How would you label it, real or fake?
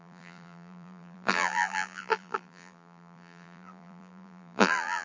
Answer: fake